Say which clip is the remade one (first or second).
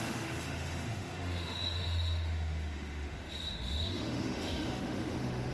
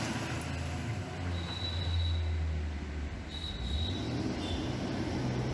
first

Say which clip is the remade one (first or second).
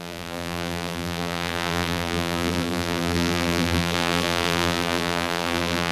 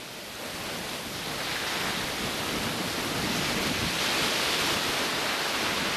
first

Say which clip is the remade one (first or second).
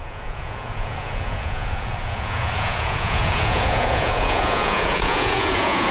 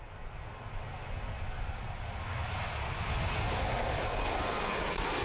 first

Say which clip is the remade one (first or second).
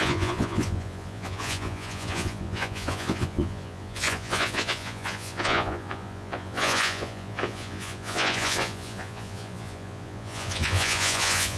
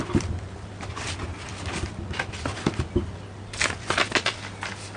first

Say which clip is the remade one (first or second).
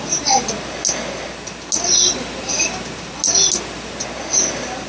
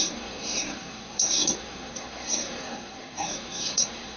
second